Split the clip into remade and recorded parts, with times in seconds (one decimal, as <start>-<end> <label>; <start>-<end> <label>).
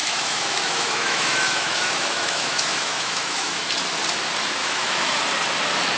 0.0-3.6 remade; 3.6-4.6 recorded; 4.6-5.2 remade; 5.2-6.0 recorded